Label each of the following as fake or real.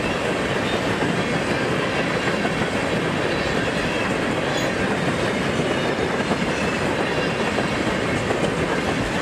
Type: real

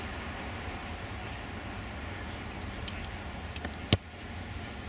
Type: real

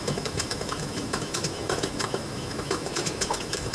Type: fake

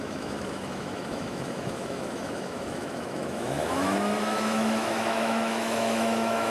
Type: fake